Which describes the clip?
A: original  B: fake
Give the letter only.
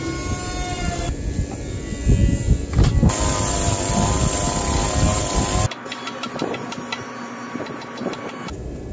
A